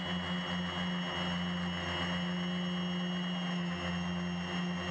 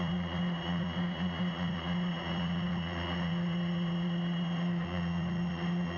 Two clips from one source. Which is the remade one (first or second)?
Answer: second